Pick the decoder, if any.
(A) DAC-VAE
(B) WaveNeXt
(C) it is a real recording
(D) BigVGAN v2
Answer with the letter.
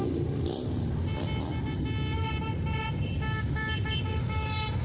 C